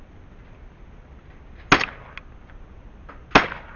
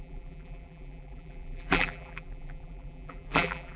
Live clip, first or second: first